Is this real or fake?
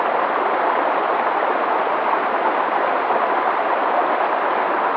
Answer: real